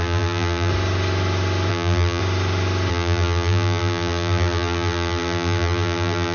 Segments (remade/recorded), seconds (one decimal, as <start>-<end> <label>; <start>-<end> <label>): 0.0-0.7 remade; 0.7-1.7 recorded; 1.7-2.2 remade; 2.2-2.9 recorded; 2.9-6.3 remade